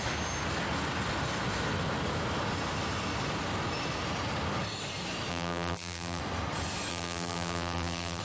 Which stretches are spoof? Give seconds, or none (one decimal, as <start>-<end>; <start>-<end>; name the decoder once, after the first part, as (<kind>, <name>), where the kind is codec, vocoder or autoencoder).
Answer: 5.3-6.2 (vocoder, BigVGAN v2); 6.9-8.2